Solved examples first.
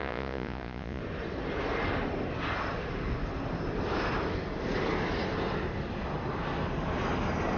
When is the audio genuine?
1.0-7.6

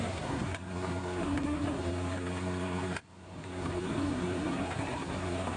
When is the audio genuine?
none